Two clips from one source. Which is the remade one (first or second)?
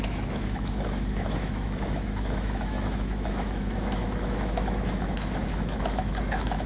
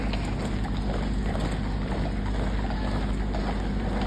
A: first